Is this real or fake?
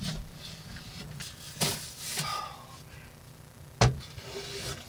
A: real